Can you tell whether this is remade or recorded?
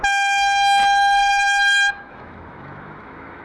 remade